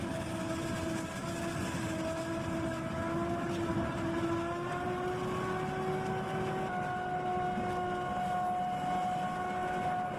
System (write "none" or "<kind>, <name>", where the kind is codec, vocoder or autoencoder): none